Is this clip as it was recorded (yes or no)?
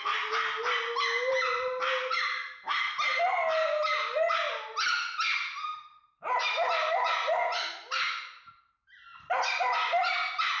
yes